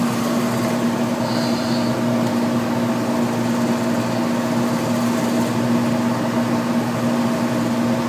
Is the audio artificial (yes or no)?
no